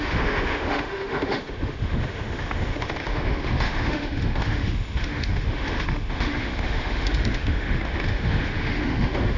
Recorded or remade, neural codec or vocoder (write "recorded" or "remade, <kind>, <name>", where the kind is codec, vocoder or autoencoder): remade, autoencoder, DAC-VAE